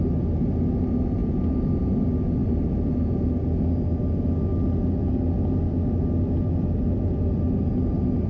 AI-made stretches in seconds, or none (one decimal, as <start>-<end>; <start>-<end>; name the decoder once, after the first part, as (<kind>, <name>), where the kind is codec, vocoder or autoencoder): none